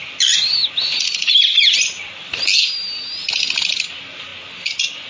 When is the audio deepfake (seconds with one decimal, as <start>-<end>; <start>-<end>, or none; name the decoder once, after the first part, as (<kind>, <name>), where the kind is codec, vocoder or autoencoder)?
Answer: none